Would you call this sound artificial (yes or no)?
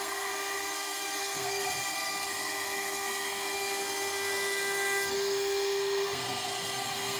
yes